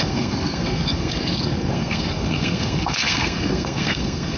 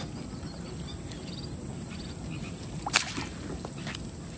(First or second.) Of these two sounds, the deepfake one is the first